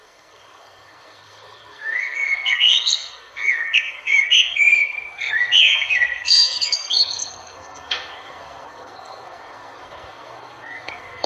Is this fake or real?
fake